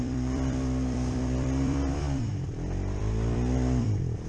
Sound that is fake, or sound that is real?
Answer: fake